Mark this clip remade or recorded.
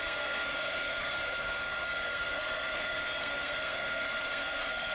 remade